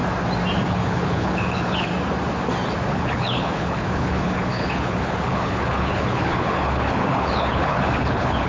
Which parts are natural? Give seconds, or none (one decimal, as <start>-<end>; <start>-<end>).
0.0-0.7; 1.9-2.9